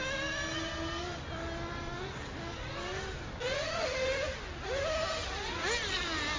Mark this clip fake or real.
real